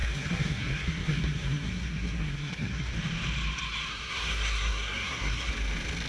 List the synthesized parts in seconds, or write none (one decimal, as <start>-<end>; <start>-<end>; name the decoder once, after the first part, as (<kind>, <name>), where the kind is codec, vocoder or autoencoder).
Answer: 0.0-2.9 (codec, SNAC); 3.9-5.5